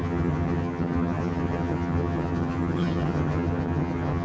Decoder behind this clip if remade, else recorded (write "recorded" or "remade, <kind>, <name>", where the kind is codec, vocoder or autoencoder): remade, vocoder, HiFi-GAN